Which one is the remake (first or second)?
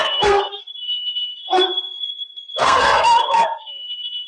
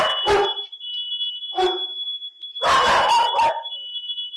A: first